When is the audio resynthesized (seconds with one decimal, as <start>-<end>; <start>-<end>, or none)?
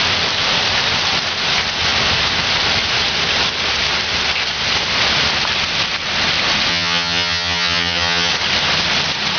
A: 6.7-8.3